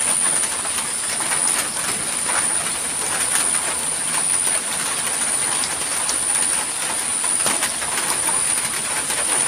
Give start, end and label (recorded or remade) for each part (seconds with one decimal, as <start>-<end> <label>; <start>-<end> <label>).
0.0-9.5 recorded